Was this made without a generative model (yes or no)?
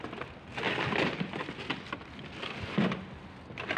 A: yes